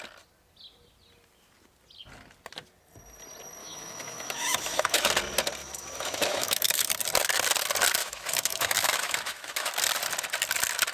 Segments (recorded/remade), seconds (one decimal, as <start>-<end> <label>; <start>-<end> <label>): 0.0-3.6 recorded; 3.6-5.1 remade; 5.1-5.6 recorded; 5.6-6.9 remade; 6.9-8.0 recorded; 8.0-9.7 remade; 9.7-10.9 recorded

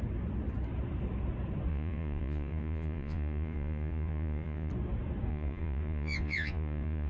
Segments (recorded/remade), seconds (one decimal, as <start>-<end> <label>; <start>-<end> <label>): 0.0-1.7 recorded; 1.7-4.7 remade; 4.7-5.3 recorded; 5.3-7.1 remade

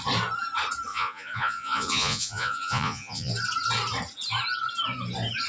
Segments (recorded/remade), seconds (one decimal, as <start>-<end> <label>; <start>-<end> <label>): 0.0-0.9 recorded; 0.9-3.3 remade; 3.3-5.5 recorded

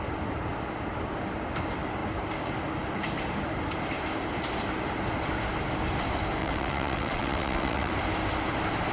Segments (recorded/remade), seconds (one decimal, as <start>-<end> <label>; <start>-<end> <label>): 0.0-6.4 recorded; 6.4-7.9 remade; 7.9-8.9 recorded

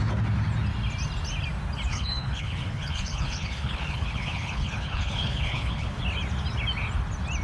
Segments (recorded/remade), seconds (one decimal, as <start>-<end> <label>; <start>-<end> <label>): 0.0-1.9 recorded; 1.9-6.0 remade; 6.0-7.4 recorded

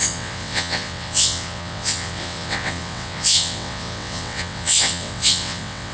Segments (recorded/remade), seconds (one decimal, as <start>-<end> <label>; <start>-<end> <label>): 0.0-5.9 remade

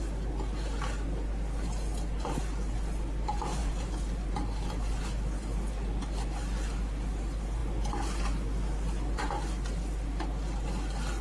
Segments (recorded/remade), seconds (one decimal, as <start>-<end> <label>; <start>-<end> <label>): 0.0-11.2 recorded

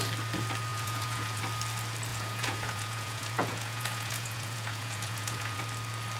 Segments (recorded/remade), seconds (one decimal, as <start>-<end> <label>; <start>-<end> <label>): 0.0-0.7 recorded; 0.7-1.4 remade; 1.4-2.1 recorded; 2.1-5.6 remade; 5.6-6.2 recorded